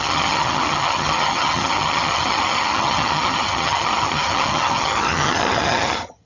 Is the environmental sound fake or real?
fake